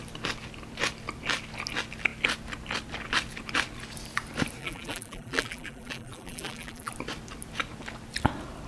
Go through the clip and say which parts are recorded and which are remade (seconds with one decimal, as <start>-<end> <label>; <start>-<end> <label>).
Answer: 0.0-4.6 recorded; 4.6-6.9 remade; 6.9-8.7 recorded